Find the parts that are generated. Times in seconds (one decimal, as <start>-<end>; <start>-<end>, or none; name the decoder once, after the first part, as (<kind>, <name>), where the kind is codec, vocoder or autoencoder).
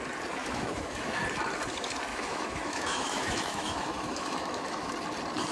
0.4-1.2 (autoencoder, DAC-VAE); 2.1-4.9